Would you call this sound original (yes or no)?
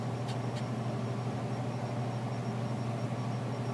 yes